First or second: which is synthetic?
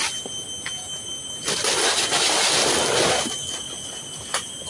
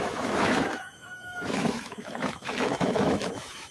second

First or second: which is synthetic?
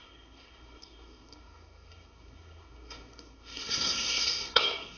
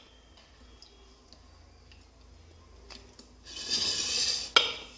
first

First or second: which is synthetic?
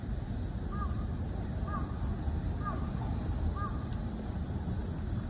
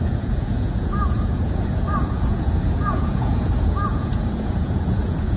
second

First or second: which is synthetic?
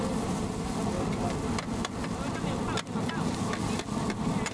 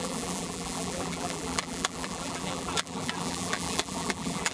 second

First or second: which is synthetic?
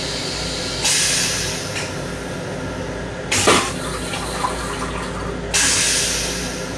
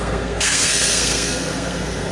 second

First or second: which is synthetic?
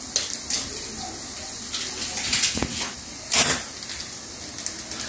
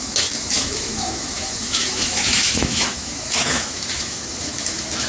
second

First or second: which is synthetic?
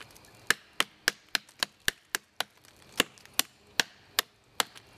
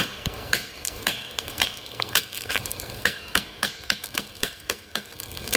second